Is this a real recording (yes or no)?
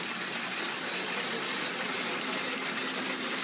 yes